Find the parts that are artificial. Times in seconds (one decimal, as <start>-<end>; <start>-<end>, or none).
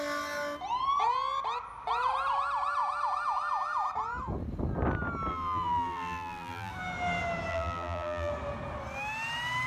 5.3-6.7; 7.5-8.3